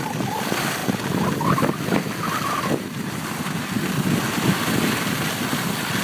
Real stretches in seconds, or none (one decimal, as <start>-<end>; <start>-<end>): 0.0-6.0